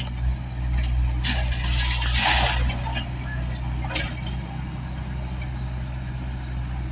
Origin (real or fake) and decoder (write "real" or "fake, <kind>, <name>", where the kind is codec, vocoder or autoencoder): real